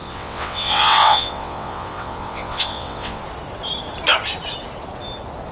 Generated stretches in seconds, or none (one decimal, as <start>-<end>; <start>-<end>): 0.0-3.2